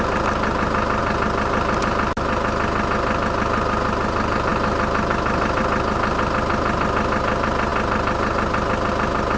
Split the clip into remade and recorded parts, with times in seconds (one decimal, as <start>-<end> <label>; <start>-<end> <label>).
0.0-9.4 recorded